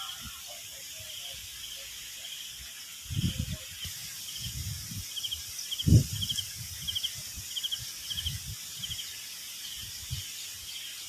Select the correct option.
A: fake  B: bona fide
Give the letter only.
B